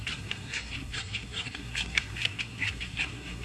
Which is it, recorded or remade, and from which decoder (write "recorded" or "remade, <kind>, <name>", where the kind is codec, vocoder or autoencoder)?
remade, codec, SNAC